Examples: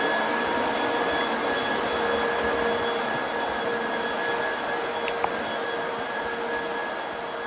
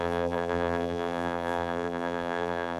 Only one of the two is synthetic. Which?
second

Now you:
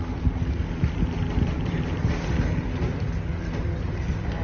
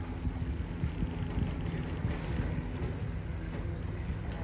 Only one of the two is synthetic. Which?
first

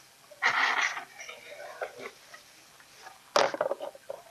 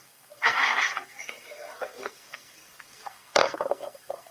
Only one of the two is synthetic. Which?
second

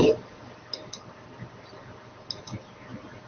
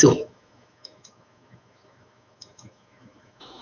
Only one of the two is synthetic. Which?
second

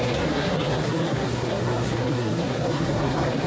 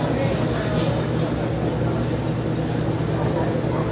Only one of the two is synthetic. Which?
first